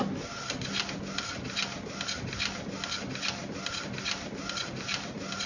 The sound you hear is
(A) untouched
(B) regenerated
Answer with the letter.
A